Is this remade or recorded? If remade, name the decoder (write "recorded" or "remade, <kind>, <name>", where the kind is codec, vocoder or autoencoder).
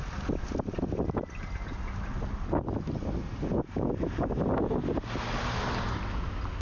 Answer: recorded